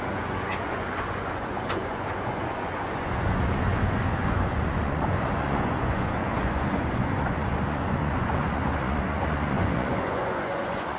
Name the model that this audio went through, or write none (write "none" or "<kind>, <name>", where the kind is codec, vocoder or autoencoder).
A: vocoder, Vocos